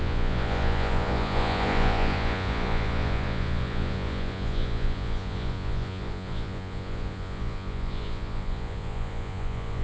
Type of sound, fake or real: fake